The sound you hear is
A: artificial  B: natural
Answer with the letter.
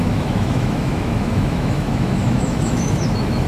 A